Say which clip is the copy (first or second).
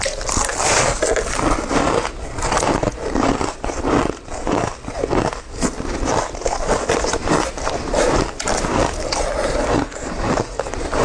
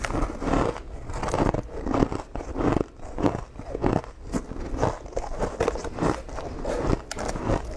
first